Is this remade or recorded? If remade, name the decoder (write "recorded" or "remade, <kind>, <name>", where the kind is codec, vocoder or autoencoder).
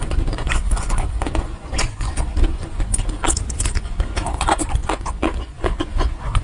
remade, vocoder, Vocos